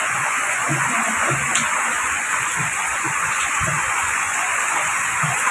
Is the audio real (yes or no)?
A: no